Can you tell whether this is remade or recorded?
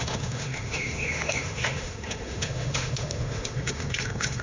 remade